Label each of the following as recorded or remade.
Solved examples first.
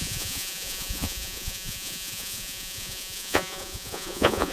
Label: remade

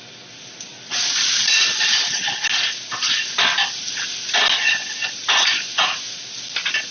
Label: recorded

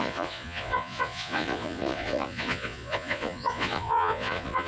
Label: remade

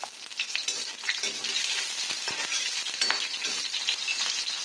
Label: recorded